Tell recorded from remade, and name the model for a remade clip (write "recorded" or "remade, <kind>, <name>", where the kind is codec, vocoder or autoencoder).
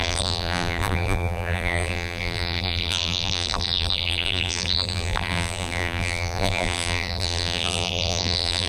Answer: remade, vocoder, BigVGAN v2